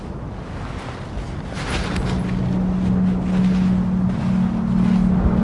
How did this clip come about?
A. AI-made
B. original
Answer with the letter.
B